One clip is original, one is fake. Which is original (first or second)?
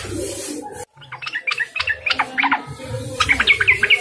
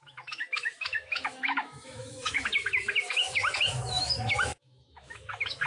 first